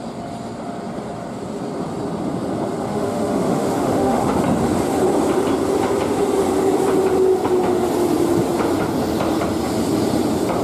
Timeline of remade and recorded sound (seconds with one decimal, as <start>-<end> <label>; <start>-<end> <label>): 0.0-2.9 recorded; 2.9-4.4 remade; 4.4-10.6 recorded